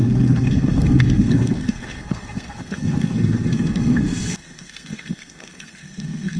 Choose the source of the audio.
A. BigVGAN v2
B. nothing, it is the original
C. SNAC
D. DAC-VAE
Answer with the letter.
C